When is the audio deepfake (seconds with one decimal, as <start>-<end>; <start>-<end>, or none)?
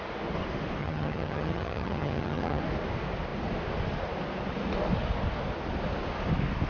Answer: 0.8-2.6